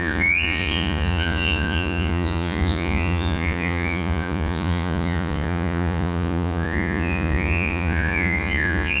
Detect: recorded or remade remade